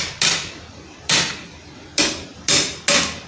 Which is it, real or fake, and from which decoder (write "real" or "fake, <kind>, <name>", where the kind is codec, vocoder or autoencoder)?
real